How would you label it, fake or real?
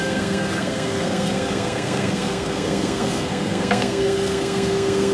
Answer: fake